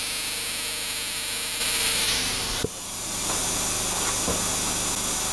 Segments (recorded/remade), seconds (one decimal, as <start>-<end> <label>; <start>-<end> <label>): 0.0-1.6 recorded; 1.6-3.3 remade; 3.3-5.3 recorded